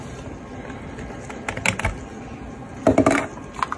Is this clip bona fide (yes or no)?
yes